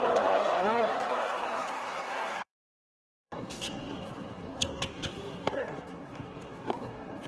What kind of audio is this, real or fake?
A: fake